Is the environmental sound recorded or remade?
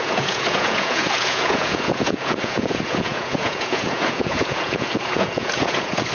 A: remade